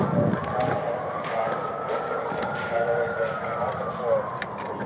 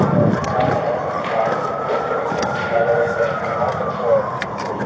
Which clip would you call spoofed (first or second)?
second